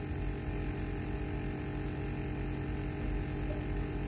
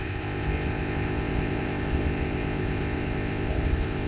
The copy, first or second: second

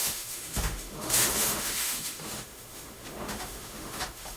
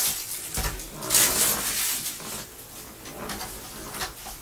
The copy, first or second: first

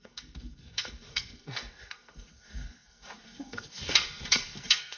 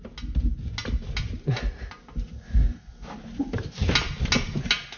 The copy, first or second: first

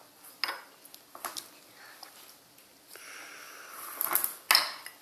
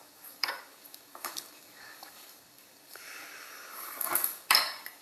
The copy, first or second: second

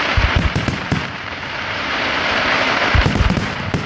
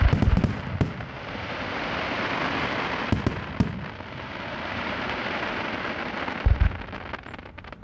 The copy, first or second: first